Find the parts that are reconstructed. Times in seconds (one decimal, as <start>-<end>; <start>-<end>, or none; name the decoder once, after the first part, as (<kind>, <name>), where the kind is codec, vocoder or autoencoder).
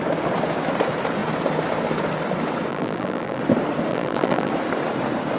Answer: 2.7-3.4 (vocoder, BigVGAN v2); 3.9-4.5